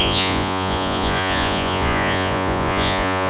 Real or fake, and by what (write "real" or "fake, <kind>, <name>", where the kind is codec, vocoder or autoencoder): fake, vocoder, Vocos